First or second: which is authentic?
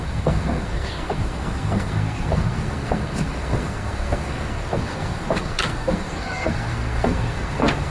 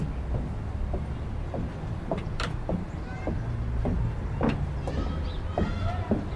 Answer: second